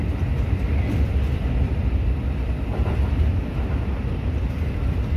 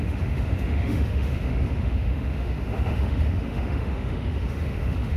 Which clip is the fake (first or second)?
second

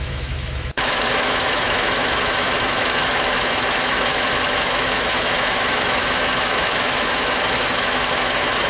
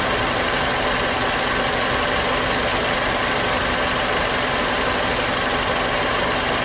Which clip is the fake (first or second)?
first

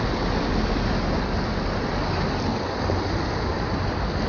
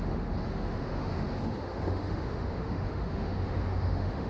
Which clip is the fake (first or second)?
second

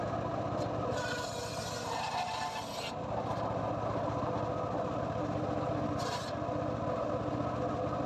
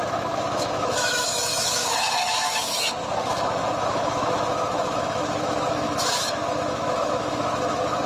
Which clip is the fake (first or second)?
second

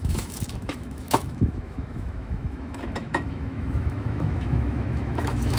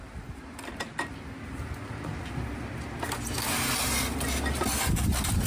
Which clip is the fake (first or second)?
first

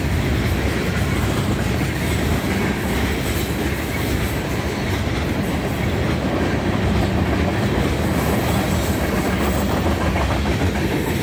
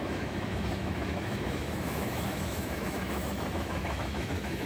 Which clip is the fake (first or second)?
second